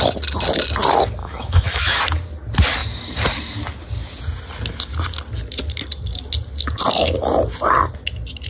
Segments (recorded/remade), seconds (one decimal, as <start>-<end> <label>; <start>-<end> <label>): 0.0-1.2 recorded; 1.2-2.0 remade; 2.0-8.5 recorded